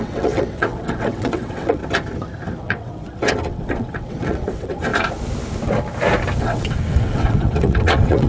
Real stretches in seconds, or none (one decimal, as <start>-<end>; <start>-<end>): 1.8-2.6; 4.9-6.4

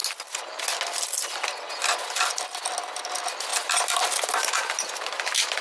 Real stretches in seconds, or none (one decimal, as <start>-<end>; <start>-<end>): 0.0-5.6